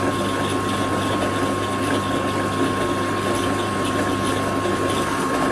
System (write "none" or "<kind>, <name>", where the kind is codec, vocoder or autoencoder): none